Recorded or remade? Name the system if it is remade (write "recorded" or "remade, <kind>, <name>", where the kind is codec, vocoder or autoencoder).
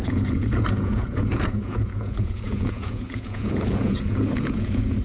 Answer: remade, vocoder, Vocos